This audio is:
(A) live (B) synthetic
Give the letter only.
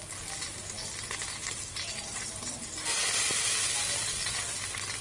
A